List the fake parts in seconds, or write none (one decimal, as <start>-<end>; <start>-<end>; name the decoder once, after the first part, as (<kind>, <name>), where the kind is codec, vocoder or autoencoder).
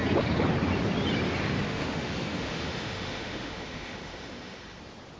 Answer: 1.7-4.8 (autoencoder, DAC-VAE)